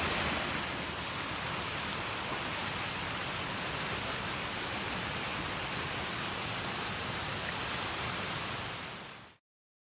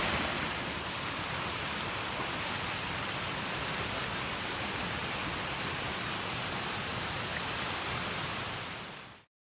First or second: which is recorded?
first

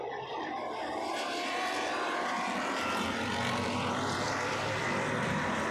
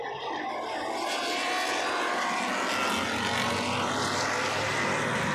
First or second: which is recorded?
second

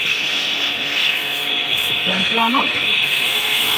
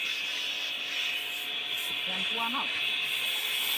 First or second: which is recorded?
second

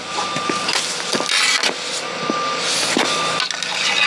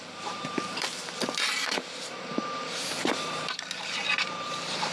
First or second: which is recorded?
first